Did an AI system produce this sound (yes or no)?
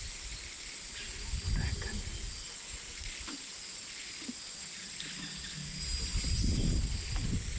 no